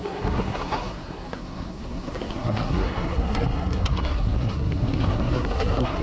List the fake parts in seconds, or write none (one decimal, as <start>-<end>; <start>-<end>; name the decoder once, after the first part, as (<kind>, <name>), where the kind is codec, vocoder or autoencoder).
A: 0.0-6.0 (codec, SNAC)